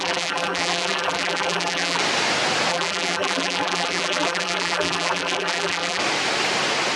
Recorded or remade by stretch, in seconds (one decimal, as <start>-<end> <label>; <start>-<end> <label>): 0.0-2.0 remade; 2.0-2.7 recorded; 2.7-6.0 remade; 6.0-7.0 recorded